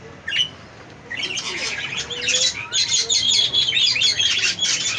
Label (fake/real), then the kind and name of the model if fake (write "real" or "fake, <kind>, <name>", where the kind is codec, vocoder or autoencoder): real